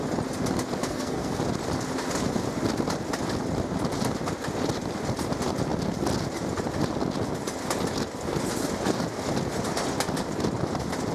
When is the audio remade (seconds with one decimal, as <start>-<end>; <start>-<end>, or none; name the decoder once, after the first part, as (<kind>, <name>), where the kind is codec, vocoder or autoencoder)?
0.8-1.4 (codec, SNAC)